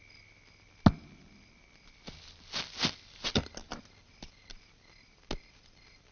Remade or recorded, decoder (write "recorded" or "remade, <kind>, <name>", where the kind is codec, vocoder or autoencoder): recorded